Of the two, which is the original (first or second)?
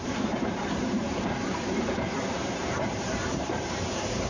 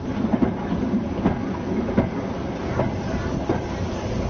second